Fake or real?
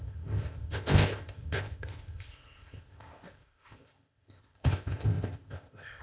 fake